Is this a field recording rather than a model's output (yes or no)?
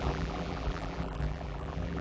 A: no